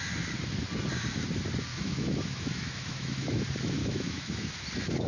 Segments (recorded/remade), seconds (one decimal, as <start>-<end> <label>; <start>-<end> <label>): 0.0-1.7 recorded; 1.7-3.4 remade; 3.4-3.8 recorded; 3.8-4.5 remade; 4.5-5.1 recorded